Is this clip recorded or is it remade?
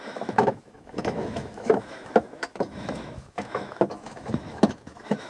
remade